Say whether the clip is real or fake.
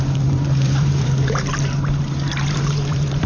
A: fake